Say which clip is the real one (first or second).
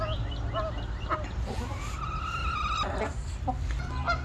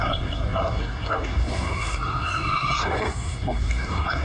first